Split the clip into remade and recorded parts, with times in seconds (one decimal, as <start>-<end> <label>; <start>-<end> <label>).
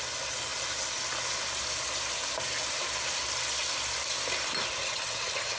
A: 0.0-4.8 recorded; 4.8-5.6 remade